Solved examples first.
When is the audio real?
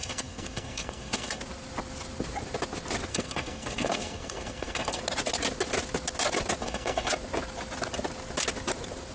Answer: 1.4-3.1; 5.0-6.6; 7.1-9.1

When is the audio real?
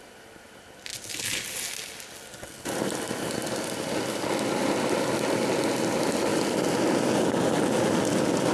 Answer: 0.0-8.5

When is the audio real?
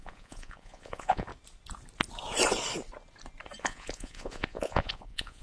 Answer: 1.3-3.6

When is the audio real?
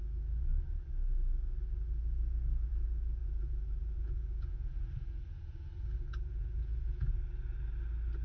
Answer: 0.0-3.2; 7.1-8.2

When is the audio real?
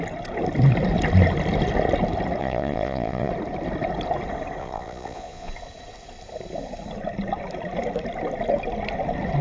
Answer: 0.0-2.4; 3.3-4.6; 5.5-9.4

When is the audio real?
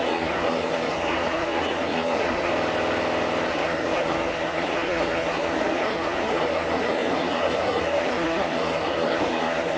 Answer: 2.5-3.5